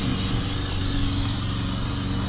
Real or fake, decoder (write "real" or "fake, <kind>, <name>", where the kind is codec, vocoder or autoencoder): real